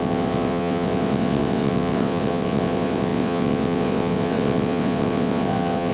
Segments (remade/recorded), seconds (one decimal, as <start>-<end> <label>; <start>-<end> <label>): 0.0-5.9 remade